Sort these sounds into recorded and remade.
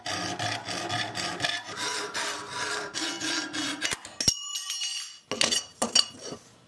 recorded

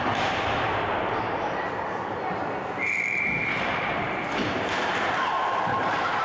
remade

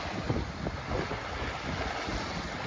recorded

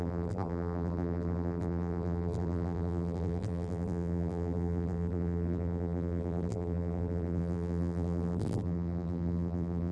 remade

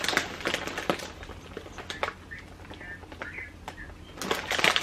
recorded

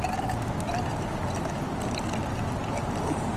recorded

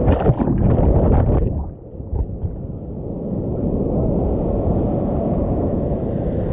recorded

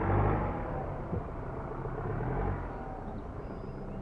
recorded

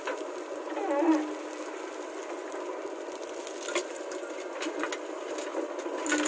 recorded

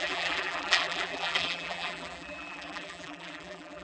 remade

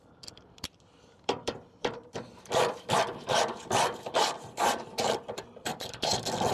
remade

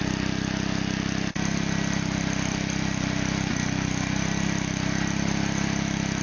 recorded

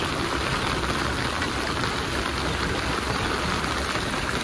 recorded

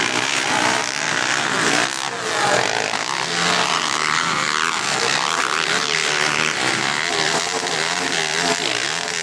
recorded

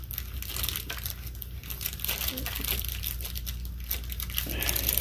recorded